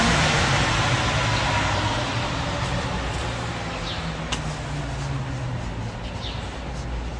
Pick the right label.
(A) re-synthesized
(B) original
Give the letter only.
B